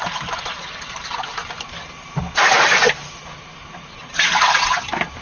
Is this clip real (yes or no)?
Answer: yes